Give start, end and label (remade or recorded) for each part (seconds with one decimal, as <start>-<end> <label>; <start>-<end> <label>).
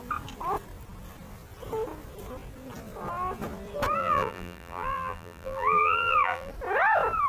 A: 0.0-4.0 recorded; 4.0-6.5 remade; 6.5-7.3 recorded